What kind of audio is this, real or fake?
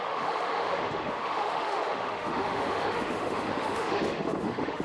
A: fake